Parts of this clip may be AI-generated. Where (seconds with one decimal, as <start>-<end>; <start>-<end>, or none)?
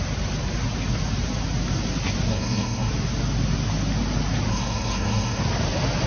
2.3-2.9; 4.5-5.4